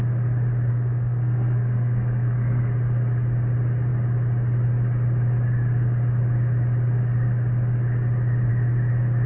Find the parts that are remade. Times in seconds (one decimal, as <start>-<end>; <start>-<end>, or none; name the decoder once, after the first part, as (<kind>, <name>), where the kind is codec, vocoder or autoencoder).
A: 0.7-2.6 (codec, SNAC)